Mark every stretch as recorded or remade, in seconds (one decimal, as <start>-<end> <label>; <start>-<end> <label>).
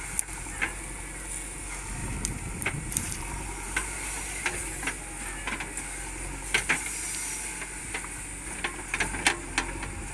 0.0-2.0 recorded; 2.0-4.6 remade; 4.6-10.1 recorded